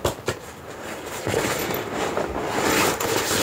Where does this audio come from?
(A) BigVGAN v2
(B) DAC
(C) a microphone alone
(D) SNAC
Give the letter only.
C